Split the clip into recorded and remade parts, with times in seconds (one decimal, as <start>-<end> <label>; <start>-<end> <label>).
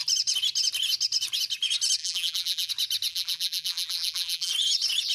0.0-2.0 recorded; 2.0-2.7 remade; 2.7-3.1 recorded; 3.1-4.5 remade; 4.5-5.1 recorded